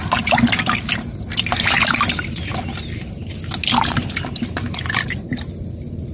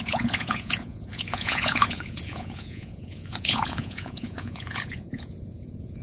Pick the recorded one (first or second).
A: first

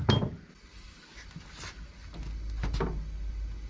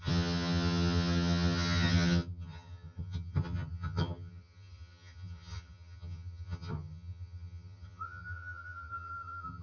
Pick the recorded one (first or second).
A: first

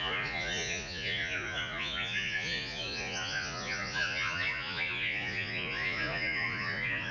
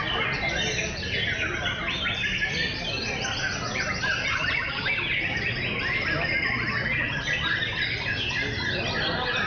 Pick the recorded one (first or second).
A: second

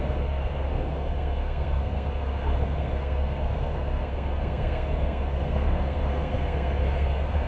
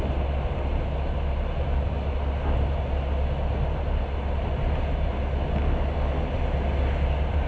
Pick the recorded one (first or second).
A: second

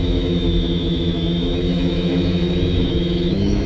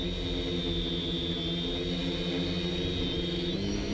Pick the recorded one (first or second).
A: second